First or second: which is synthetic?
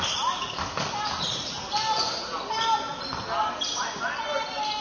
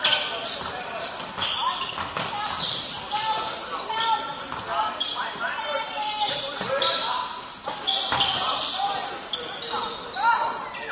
second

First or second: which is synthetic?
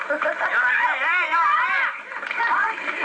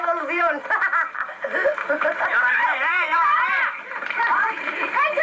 second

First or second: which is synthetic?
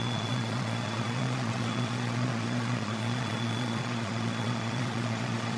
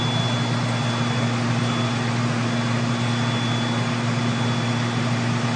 first